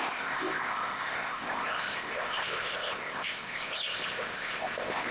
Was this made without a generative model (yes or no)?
no